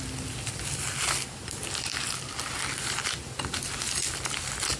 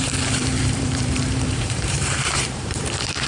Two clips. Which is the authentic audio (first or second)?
first